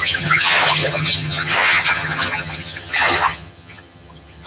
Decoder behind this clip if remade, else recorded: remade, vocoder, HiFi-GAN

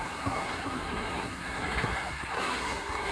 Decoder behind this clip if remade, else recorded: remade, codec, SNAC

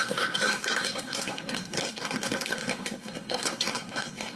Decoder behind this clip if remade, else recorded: remade, codec, SNAC